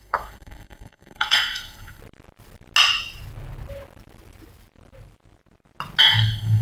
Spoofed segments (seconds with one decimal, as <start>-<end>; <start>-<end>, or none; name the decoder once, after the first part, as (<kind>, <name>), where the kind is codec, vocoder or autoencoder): 0.0-2.0 (codec, SNAC); 6.0-6.6